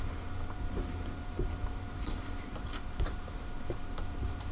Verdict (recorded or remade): remade